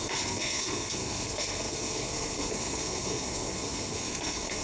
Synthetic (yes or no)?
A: yes